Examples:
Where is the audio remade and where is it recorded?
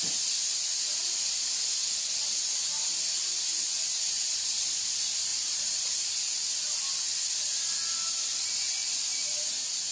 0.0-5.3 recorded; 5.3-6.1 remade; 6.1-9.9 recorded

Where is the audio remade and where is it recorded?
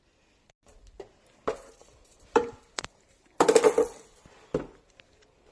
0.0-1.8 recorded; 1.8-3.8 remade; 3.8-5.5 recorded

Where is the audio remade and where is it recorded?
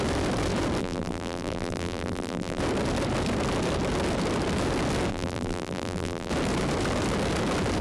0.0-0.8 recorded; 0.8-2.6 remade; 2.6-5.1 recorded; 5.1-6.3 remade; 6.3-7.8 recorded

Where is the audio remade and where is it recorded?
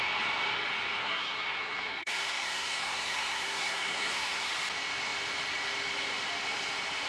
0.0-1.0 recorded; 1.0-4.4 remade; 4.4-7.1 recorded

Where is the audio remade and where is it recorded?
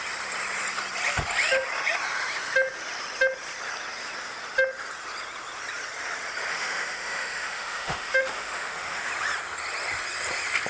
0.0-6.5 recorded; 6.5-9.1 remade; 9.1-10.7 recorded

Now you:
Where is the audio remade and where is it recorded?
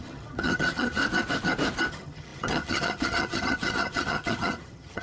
0.0-1.0 remade; 1.0-1.9 recorded; 1.9-5.0 remade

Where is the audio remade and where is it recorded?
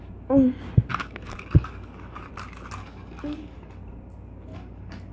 0.0-0.9 recorded; 0.9-2.3 remade; 2.3-2.8 recorded; 2.8-3.8 remade; 3.8-4.5 recorded; 4.5-5.1 remade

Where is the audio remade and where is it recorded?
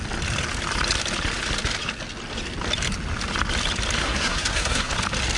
0.0-4.0 recorded; 4.0-4.9 remade; 4.9-5.4 recorded